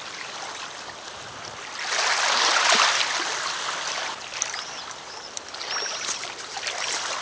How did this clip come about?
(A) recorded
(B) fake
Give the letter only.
A